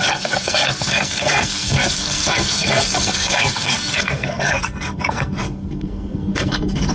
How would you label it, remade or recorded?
remade